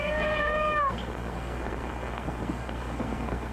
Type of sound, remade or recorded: remade